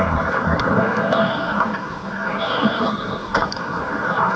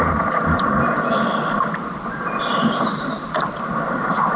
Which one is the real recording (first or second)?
second